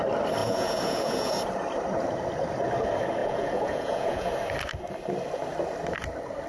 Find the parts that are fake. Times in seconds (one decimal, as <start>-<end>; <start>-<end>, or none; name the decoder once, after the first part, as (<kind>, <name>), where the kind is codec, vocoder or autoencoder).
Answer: 0.4-1.3 (vocoder, Vocos); 3.2-4.3